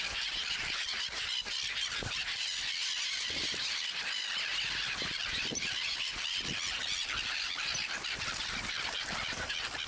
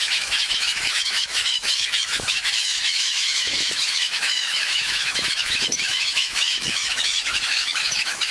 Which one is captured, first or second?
first